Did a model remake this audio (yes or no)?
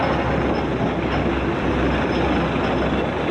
no